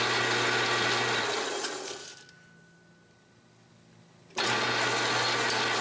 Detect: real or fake real